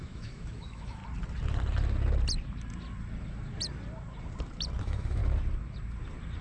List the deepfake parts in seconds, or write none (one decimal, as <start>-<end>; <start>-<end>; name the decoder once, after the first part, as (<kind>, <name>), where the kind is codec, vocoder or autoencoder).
0.0-1.0 (autoencoder, DAC-VAE); 4.8-5.2